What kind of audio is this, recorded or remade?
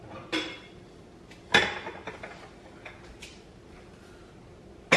recorded